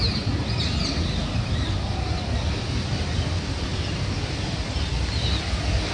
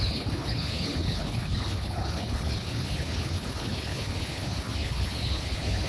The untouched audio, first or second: first